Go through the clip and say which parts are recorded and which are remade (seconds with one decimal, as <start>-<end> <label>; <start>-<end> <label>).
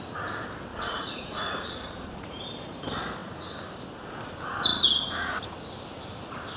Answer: 0.0-0.7 recorded; 0.7-2.4 remade; 2.4-4.7 recorded; 4.7-5.4 remade; 5.4-6.6 recorded